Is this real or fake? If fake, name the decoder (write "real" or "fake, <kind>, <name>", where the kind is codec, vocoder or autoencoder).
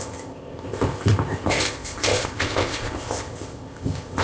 fake, codec, ZipCodec